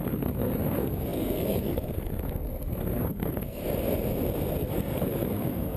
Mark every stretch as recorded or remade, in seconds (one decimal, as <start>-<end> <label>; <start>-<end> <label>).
0.0-3.6 remade; 3.6-4.6 recorded; 4.6-5.8 remade